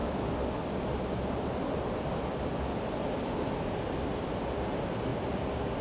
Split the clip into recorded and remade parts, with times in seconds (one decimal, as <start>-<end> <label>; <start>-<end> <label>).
0.0-5.8 recorded